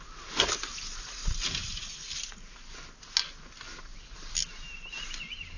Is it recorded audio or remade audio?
recorded